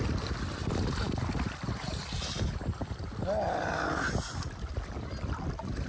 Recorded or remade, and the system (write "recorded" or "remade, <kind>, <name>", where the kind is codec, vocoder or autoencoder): recorded